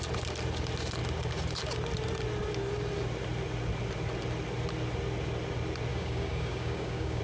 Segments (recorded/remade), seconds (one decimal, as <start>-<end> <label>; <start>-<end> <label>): 0.0-5.9 recorded; 5.9-7.2 remade